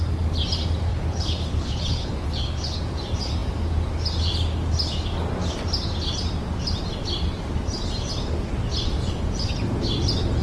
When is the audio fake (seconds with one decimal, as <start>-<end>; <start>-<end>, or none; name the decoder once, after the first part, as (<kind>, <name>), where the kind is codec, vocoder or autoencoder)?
0.9-2.8 (codec, HILCodec)